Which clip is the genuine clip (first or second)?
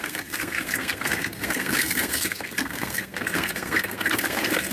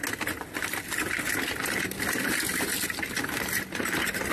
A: second